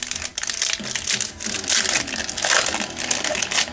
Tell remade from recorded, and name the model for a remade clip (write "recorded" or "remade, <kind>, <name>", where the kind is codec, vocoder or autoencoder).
recorded